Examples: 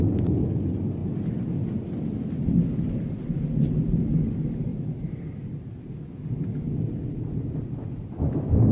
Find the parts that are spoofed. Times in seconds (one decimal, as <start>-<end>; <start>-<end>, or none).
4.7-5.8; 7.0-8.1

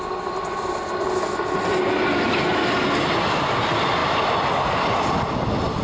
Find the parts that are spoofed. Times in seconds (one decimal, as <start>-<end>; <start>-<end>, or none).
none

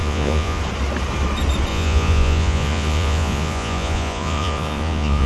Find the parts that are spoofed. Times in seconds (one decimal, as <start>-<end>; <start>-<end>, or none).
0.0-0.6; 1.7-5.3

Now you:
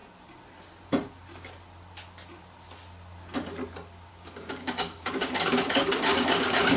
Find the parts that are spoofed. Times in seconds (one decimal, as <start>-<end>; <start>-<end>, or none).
4.1-6.8

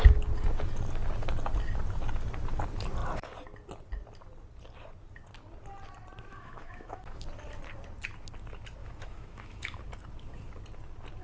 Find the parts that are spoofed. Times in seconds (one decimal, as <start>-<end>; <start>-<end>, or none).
6.3-7.2; 8.8-9.8

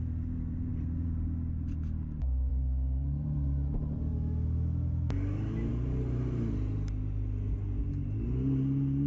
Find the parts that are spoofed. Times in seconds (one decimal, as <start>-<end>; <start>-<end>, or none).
none

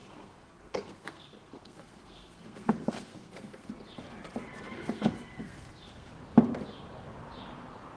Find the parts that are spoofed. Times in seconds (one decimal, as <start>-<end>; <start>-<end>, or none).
0.0-3.7; 4.7-6.1